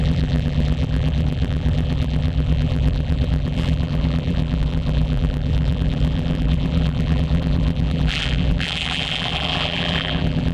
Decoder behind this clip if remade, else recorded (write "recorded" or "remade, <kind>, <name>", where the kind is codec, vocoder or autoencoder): remade, vocoder, BigVGAN v2